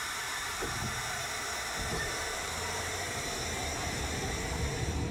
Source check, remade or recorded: remade